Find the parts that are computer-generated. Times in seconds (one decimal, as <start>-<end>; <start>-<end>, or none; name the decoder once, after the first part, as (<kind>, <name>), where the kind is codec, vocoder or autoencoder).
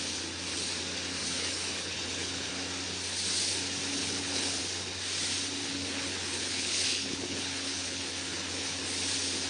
1.2-2.5 (codec, HILCodec); 4.0-4.6; 5.6-8.8